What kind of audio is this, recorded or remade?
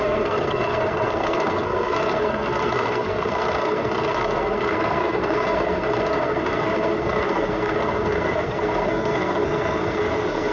remade